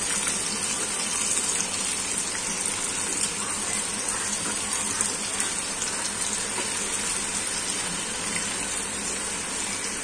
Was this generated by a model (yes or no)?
no